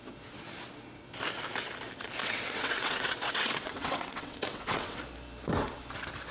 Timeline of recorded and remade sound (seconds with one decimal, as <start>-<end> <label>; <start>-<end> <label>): 0.0-2.2 recorded; 2.2-5.0 remade; 5.0-6.3 recorded